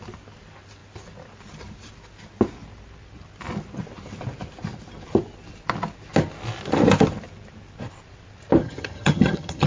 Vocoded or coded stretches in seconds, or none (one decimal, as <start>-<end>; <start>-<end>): 8.6-9.7